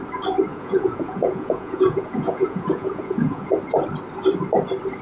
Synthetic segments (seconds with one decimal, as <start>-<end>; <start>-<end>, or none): 0.5-3.5